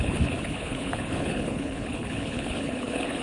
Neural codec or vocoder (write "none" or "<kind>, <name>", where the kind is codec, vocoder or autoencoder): codec, HILCodec